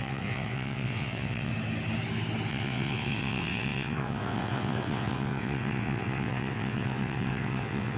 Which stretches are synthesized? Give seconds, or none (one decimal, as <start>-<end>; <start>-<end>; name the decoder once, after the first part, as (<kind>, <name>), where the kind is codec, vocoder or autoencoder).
0.0-1.5 (vocoder, WaveNeXt); 2.5-8.0